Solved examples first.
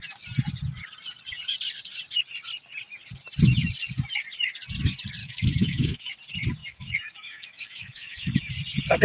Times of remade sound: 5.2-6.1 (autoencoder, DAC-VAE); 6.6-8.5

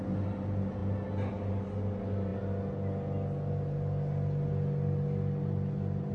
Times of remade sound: none

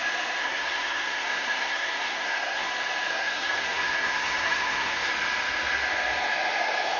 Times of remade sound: 0.4-2.7 (codec, SNAC); 3.1-5.1

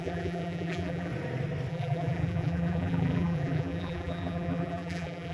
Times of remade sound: 0.0-1.1 (vocoder, BigVGAN v2); 1.7-5.3

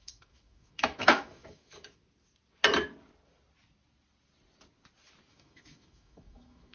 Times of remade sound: 0.0-2.0 (autoencoder, DAC-VAE); 5.3-6.7

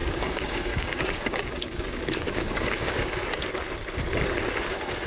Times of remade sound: 0.0-3.1 (codec, DAC)

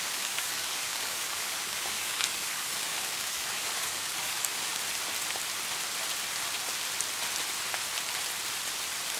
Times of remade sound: 0.0-4.7 (codec, DAC)